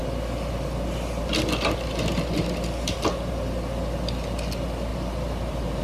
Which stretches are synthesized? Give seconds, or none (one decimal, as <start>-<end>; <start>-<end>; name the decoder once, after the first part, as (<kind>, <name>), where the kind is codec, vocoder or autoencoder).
4.9-5.8 (vocoder, BigVGAN v2)